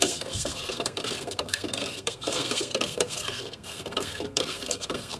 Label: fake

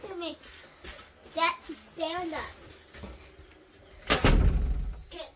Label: real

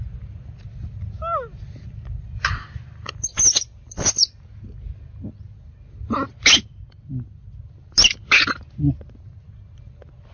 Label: real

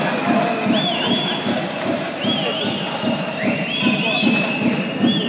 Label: real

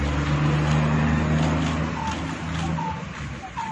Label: real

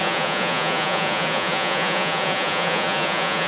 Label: fake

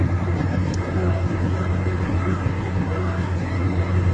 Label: fake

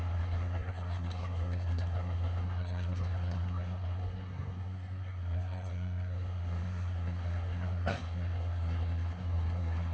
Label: fake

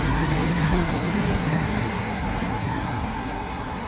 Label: fake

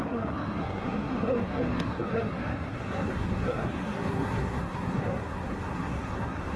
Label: fake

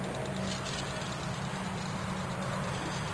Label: real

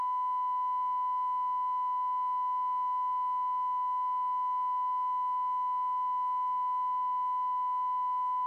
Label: real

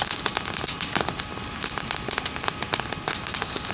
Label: real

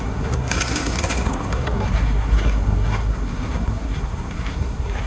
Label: fake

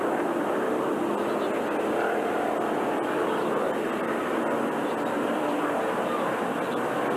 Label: real